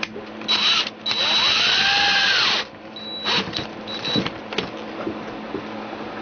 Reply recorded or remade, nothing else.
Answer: recorded